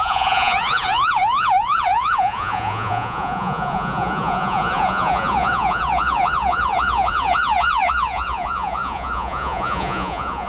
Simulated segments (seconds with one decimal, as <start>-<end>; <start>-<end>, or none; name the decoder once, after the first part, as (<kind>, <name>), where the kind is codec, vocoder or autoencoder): 0.0-10.5 (vocoder, Vocos)